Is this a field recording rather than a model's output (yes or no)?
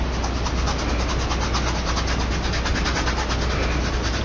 yes